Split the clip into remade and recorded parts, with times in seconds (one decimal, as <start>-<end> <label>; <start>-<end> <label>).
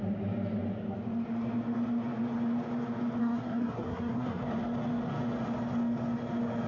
0.0-3.2 recorded; 3.2-4.4 remade; 4.4-6.7 recorded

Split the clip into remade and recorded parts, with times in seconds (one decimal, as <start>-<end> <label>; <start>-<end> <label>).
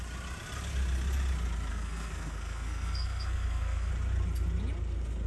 0.0-1.7 recorded; 1.7-3.9 remade; 3.9-5.3 recorded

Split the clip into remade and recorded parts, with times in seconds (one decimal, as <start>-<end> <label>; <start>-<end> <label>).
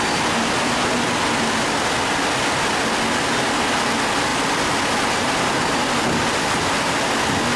0.0-7.6 recorded